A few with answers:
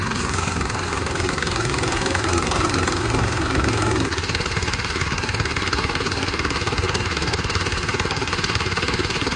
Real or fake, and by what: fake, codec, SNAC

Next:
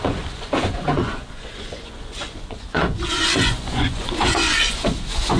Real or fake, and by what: fake, vocoder, Vocos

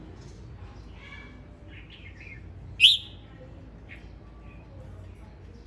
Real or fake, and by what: real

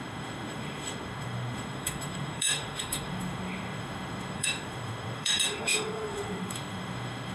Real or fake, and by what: fake, autoencoder, DAC-VAE